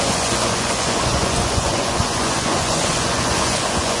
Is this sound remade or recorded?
remade